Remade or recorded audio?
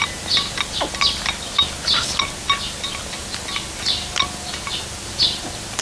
recorded